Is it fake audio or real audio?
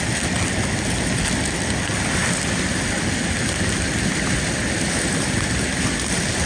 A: real